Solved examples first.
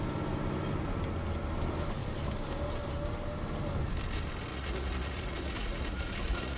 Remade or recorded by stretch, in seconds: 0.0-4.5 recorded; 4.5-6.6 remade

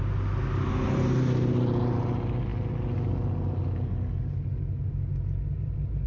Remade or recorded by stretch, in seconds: 0.0-6.1 recorded

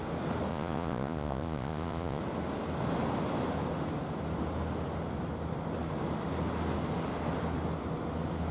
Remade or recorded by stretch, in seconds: 0.0-0.5 recorded; 0.5-2.2 remade; 2.2-8.5 recorded

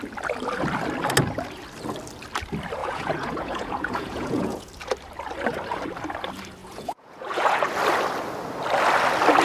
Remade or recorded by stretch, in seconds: 0.0-2.8 recorded; 2.8-4.7 remade; 4.7-6.6 recorded; 6.6-7.7 remade; 7.7-9.4 recorded

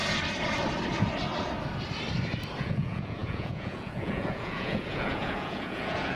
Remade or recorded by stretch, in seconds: 0.0-2.6 recorded; 2.6-6.2 remade

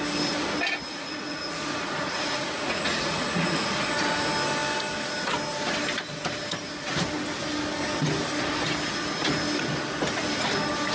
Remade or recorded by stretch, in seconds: 0.0-0.9 recorded; 0.9-3.9 remade; 3.9-10.9 recorded

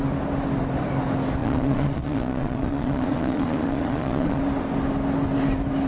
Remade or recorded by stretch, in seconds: 0.0-1.4 recorded; 1.4-4.4 remade; 4.4-5.9 recorded

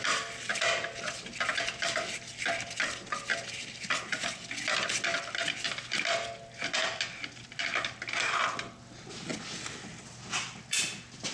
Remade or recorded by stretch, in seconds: 0.0-11.3 recorded